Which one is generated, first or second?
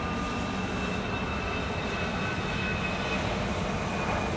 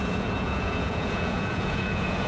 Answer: second